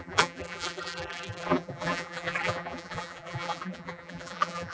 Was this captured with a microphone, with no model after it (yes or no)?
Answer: no